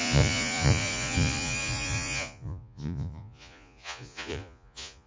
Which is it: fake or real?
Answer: fake